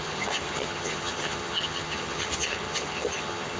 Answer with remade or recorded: remade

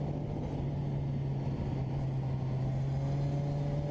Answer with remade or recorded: recorded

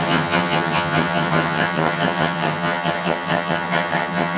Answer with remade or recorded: remade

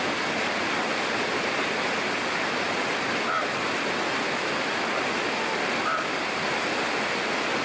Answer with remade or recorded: recorded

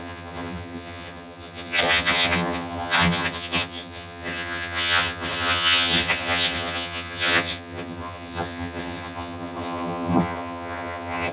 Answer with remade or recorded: remade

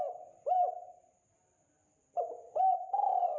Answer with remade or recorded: recorded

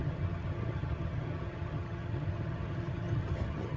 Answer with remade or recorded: remade